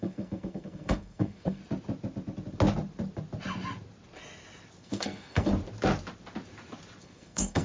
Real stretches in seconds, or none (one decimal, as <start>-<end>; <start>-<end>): 1.6-4.8; 5.5-7.0